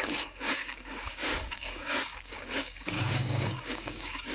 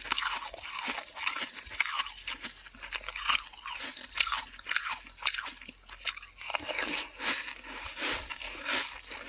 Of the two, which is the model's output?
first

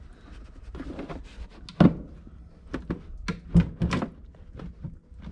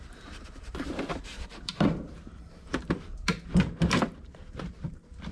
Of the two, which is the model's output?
second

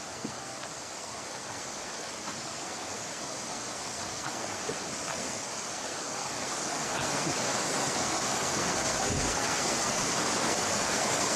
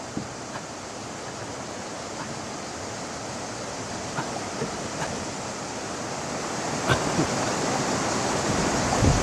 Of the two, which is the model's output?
first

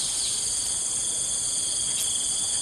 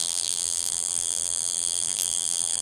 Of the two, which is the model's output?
second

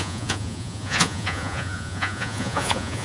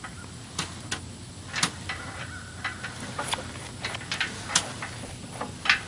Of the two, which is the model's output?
first